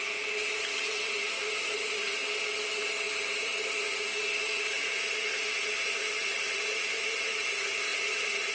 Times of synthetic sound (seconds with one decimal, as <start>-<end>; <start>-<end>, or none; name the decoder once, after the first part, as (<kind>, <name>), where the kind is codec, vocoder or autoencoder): none